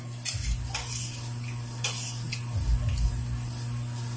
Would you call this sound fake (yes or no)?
no